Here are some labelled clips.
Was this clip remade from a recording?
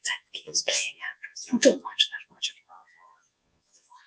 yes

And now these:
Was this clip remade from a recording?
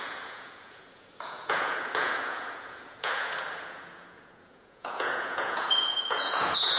yes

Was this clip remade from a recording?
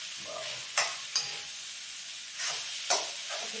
yes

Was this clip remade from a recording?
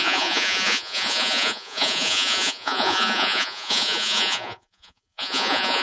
yes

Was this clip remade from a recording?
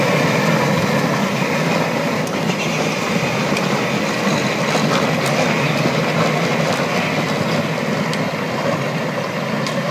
no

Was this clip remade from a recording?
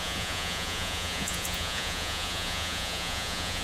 yes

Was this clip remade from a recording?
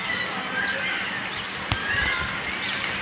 no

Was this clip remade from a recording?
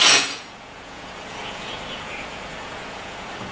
yes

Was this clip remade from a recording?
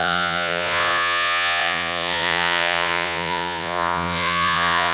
yes